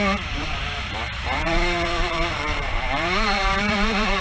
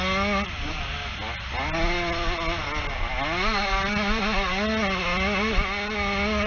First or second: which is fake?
first